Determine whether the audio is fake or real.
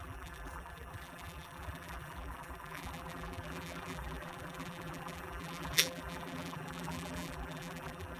fake